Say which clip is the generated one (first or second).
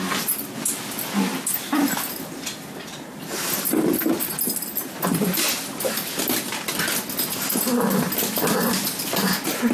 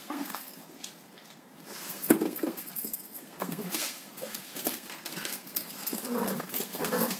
second